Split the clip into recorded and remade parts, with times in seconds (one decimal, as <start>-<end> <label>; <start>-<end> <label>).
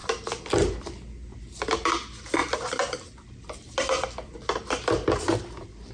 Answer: 0.0-5.9 recorded